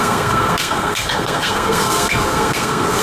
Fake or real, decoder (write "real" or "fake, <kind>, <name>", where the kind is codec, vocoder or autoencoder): fake, codec, SNAC